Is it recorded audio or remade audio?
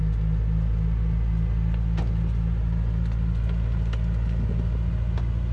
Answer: recorded